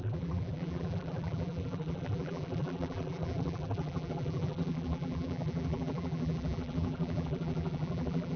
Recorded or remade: remade